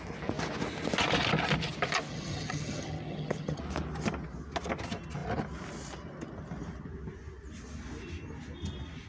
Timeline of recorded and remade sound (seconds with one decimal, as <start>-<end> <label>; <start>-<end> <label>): 0.0-2.1 recorded; 2.1-3.6 remade; 3.6-9.1 recorded